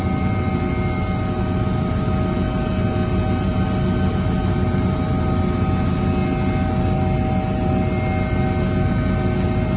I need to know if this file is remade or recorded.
recorded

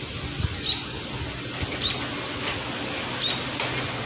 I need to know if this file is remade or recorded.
recorded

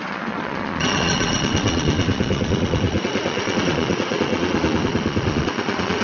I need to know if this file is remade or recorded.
remade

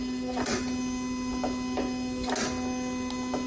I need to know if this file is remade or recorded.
recorded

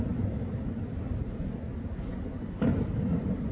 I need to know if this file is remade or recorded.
recorded